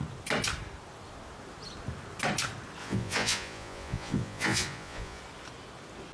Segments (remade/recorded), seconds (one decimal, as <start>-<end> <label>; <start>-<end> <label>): 0.0-2.8 recorded; 2.8-5.2 remade; 5.2-6.1 recorded